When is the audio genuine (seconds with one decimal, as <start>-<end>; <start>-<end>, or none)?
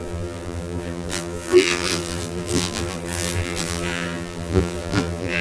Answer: none